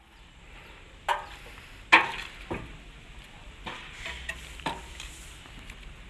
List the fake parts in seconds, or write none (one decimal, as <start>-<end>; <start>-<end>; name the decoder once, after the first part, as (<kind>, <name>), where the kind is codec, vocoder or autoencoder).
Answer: none